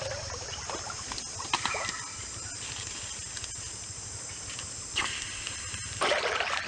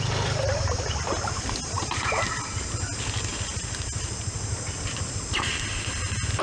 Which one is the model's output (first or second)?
first